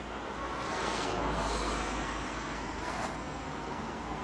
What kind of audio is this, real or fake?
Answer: fake